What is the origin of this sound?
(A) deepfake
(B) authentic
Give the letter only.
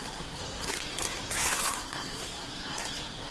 A